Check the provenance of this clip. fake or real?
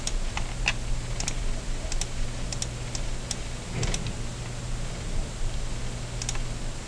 real